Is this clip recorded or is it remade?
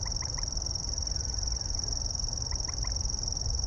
remade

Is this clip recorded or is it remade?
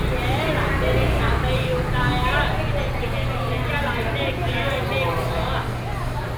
recorded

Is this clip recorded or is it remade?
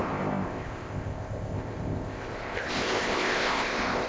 remade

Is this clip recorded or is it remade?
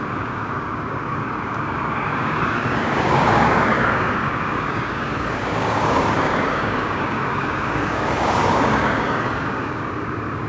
remade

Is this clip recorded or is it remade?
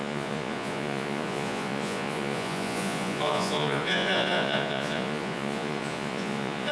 remade